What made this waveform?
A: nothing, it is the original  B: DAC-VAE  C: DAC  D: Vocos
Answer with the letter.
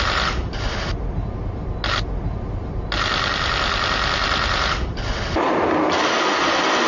A